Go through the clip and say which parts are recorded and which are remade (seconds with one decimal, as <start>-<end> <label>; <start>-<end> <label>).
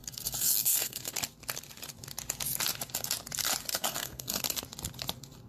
0.0-1.1 remade; 1.1-3.7 recorded; 3.7-4.4 remade; 4.4-5.5 recorded